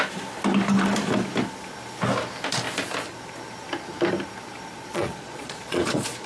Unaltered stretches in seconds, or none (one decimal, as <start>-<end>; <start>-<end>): 0.0-4.9

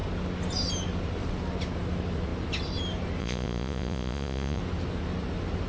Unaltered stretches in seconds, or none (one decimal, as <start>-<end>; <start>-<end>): 0.0-3.2; 4.6-5.7

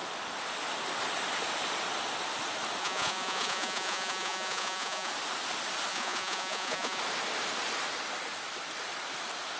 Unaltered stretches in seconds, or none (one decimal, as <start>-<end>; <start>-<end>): 0.0-2.8; 5.1-5.9; 7.0-9.6

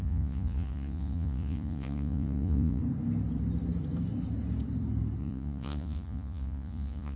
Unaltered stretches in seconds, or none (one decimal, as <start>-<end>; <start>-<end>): 2.8-5.2

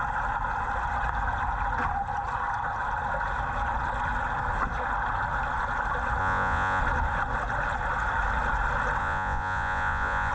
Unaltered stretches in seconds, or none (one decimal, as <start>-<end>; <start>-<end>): 0.0-6.2; 6.8-9.0

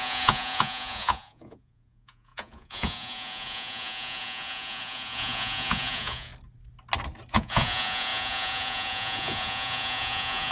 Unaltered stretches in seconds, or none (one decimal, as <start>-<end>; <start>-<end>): 6.3-7.3

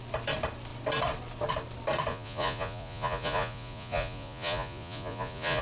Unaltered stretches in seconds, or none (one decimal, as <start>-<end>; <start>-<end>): 0.0-2.1

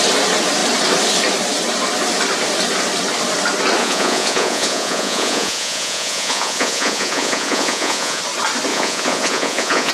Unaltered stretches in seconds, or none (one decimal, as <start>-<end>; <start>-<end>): 0.0-3.8; 8.2-8.7